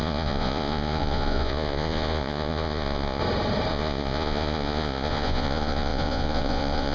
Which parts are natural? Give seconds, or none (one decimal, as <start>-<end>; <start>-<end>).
3.2-3.7